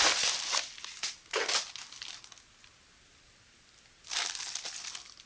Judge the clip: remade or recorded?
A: recorded